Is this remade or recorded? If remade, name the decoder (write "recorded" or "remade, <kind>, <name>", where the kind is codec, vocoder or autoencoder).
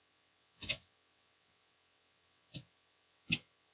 remade, vocoder, WaveNeXt